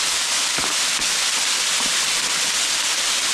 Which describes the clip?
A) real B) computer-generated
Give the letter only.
A